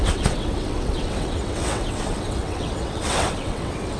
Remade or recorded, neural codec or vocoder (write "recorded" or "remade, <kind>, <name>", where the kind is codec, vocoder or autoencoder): remade, vocoder, WaveNeXt